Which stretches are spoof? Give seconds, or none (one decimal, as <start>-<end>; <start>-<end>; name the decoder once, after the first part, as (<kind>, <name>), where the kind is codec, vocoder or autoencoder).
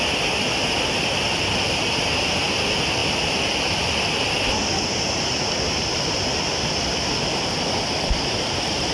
none